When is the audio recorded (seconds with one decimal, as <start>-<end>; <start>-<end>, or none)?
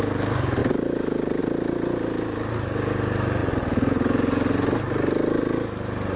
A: 0.0-6.2